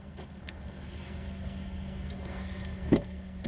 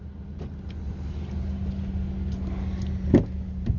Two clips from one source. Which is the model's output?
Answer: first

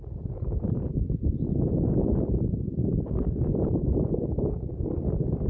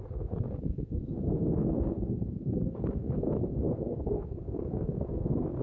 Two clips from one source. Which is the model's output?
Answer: second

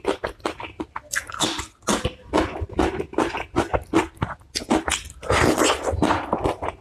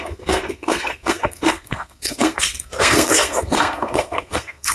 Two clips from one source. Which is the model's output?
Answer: second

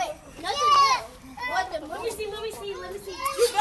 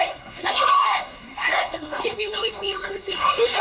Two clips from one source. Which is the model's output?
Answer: second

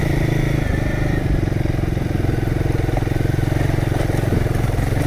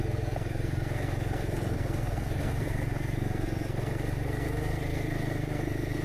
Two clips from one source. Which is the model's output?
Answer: second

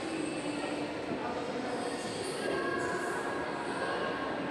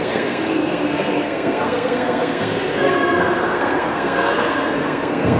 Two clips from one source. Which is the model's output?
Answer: second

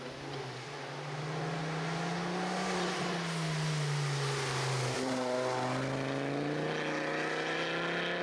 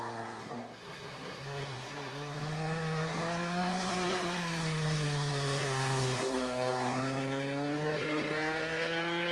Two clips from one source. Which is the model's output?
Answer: second